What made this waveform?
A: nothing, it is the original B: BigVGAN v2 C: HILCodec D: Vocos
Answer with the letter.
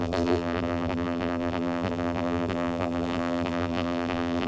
B